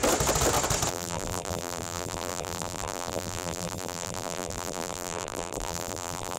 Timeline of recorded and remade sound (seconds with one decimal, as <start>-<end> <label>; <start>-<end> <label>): 0.0-0.9 recorded; 0.9-6.4 remade